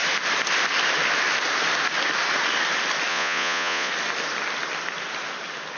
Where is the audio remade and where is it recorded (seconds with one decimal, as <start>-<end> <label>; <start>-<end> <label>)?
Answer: 0.0-3.1 recorded; 3.1-3.9 remade; 3.9-5.8 recorded